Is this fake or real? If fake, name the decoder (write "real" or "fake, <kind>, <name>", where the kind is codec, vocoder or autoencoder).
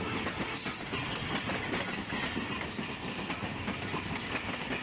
real